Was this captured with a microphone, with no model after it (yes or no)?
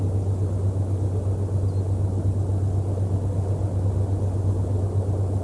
yes